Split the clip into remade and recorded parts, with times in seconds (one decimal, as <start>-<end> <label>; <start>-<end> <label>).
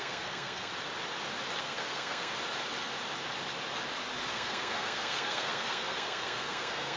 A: 0.0-0.7 remade; 0.7-1.6 recorded; 1.6-2.3 remade; 2.3-4.3 recorded; 4.3-7.0 remade